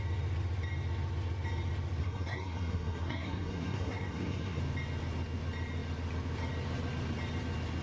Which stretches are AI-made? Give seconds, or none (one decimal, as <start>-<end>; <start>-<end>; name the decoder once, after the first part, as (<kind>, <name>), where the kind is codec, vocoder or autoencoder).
2.0-4.6 (codec, SNAC)

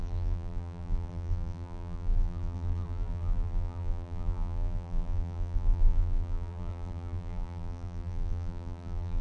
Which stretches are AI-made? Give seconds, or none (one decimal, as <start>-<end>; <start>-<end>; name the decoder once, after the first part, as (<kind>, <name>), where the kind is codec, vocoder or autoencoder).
0.0-9.2 (vocoder, BigVGAN v2)

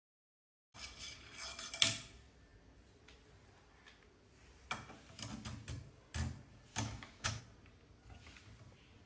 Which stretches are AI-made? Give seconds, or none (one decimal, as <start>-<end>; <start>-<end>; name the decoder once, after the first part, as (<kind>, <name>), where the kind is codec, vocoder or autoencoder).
6.7-7.4 (autoencoder, DAC-VAE)